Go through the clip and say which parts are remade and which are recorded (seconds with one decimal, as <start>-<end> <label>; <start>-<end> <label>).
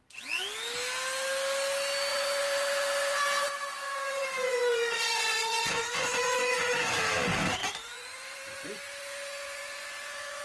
0.0-2.1 recorded; 2.1-7.0 remade; 7.0-7.6 recorded; 7.6-10.4 remade